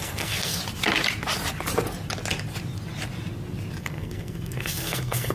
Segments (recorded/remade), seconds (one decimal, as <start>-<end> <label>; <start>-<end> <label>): 0.0-0.6 remade; 0.6-3.8 recorded; 3.8-5.3 remade